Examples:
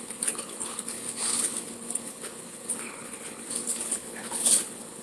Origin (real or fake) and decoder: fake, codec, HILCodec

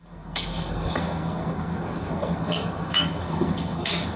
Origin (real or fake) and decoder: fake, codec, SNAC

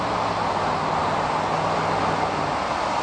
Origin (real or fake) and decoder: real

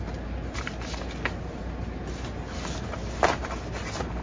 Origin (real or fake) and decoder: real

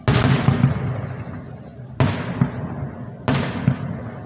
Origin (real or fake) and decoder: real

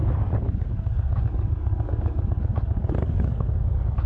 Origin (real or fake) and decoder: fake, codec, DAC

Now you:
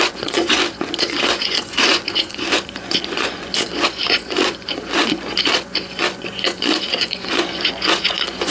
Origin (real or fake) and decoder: fake, vocoder, Vocos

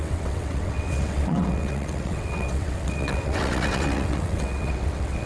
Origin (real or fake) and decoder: fake, vocoder, WaveNeXt